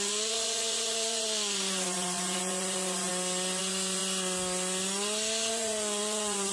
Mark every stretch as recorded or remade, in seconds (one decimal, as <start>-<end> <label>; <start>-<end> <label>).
0.0-3.1 remade; 3.1-3.6 recorded; 3.6-4.0 remade; 4.0-5.5 recorded; 5.5-6.5 remade